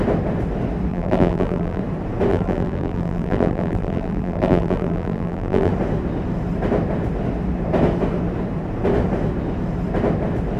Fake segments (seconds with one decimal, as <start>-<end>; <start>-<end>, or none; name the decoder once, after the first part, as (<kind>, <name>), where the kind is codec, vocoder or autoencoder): 0.9-1.8 (vocoder, BigVGAN v2); 2.3-5.7

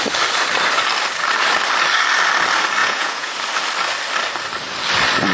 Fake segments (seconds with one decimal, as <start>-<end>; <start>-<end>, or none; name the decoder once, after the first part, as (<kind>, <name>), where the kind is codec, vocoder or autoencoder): 2.8-3.3 (vocoder, Vocos)

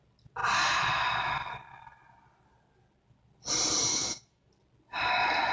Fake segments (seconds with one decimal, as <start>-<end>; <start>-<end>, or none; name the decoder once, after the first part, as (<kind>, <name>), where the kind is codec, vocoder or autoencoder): 3.9-4.5 (autoencoder, DAC-VAE)

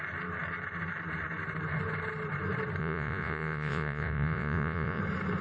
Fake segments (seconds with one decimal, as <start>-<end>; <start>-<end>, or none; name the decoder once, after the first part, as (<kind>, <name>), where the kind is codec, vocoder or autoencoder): 2.8-5.0 (vocoder, Vocos)

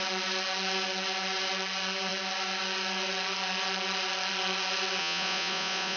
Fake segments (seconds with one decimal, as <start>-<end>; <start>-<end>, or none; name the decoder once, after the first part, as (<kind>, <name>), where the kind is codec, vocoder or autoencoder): 5.0-6.0 (vocoder, Vocos)

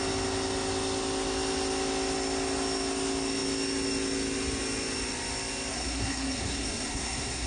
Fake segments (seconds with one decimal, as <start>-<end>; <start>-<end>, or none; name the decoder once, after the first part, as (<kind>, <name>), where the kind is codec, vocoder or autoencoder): 5.7-7.5 (codec, SNAC)